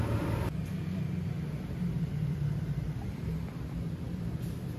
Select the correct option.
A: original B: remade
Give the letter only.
B